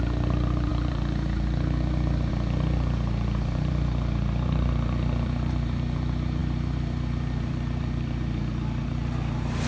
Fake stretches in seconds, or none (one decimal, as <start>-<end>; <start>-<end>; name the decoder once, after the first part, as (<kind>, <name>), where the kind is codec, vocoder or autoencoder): 0.0-9.7 (vocoder, BigVGAN v2)

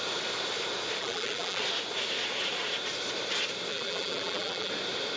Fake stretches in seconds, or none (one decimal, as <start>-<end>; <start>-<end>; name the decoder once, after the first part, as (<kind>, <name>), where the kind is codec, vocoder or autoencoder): 1.0-1.6 (vocoder, BigVGAN v2); 3.7-4.7

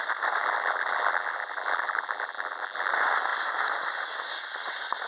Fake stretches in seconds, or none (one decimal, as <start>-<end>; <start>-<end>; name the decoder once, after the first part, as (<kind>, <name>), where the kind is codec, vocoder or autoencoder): 0.4-2.9 (vocoder, BigVGAN v2)